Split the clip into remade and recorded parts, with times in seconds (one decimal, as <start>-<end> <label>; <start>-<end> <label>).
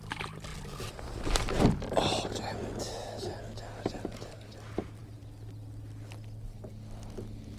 0.0-7.6 recorded